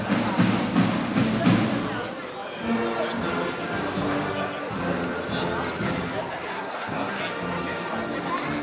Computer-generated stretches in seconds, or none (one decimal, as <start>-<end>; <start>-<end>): 6.5-7.2